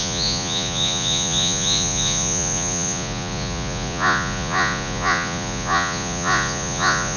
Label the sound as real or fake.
fake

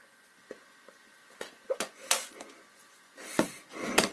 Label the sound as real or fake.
fake